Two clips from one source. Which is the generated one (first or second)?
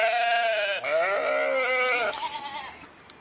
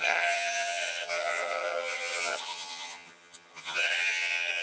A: second